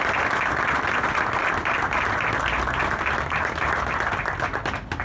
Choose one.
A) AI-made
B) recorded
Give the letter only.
B